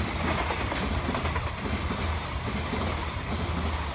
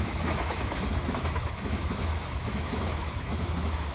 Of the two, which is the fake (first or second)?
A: second